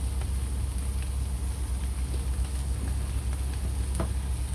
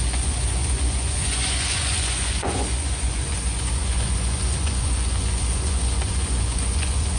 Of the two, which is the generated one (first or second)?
second